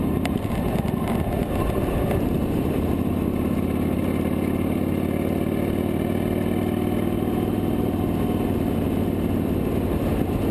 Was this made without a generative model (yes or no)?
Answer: yes